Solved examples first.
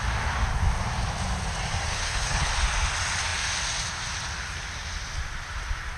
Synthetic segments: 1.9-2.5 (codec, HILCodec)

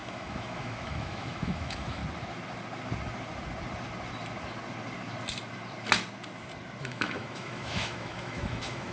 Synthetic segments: 0.0-2.0 (autoencoder, DAC-VAE); 6.8-8.9

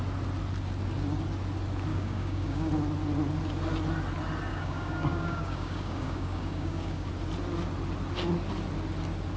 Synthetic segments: 1.9-2.7 (codec, DAC); 4.5-7.1

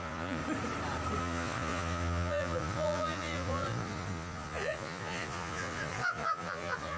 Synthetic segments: 0.0-0.4 (vocoder, Vocos); 1.2-7.0

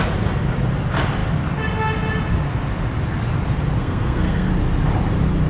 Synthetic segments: 3.8-4.5 (codec, SNAC)

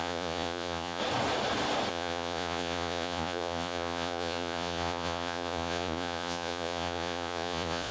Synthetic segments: 0.0-1.0 (vocoder, Vocos); 1.9-7.9

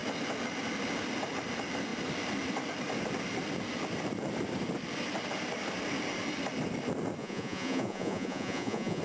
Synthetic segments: 7.2-9.0 (vocoder, Vocos)

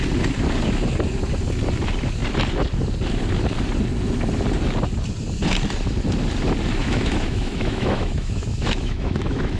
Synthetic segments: 6.8-9.6 (autoencoder, DAC-VAE)